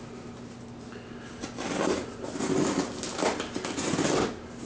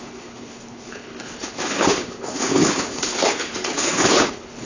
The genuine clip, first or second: first